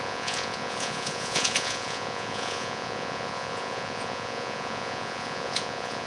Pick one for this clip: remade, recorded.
remade